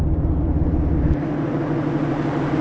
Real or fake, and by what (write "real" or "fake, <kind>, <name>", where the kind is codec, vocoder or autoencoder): real